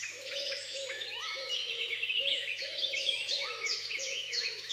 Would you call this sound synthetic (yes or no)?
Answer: yes